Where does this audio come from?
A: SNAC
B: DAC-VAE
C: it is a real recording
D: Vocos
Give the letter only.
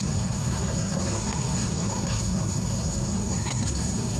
A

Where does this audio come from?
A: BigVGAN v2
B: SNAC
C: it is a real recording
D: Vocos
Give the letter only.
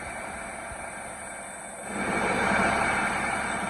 C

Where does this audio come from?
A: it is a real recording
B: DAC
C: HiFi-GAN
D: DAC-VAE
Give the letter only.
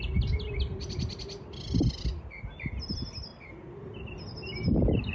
A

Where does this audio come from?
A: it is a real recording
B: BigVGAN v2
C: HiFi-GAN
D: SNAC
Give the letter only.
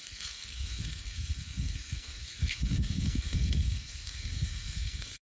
D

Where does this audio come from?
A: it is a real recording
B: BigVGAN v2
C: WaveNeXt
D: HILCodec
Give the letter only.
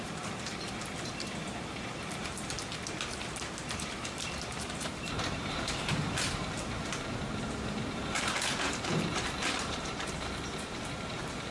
B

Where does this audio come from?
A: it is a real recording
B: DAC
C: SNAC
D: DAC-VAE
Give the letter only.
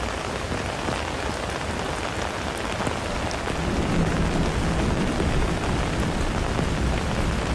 A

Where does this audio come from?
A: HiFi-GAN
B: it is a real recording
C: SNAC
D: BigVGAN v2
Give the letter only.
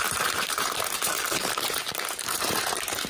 D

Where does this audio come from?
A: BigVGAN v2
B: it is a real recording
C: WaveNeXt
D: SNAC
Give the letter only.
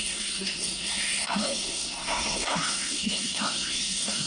D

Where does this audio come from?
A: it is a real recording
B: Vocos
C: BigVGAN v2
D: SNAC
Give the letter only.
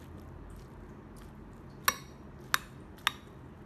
A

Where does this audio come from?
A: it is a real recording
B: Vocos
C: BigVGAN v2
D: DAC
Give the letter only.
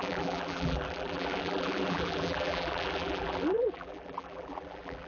C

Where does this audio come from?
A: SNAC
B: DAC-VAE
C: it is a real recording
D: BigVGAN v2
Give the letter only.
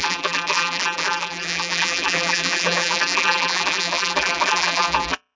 D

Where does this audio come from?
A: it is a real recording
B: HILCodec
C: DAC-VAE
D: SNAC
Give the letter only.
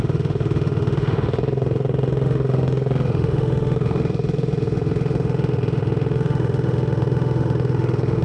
C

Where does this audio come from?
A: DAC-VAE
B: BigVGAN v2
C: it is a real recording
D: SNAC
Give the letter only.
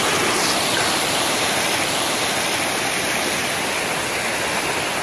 C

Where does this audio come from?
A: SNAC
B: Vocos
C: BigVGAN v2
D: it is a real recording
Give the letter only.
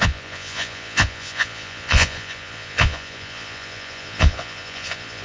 B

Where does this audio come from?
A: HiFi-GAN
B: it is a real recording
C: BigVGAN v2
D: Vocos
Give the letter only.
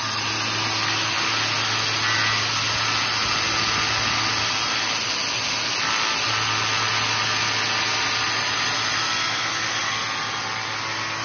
B